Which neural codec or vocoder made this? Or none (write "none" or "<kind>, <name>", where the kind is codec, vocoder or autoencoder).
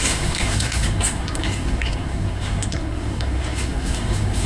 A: codec, SNAC